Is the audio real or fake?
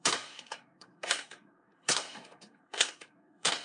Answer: fake